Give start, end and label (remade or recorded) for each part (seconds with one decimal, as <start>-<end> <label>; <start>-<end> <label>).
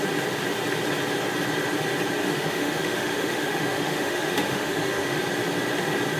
0.0-2.2 recorded; 2.2-5.2 remade; 5.2-6.2 recorded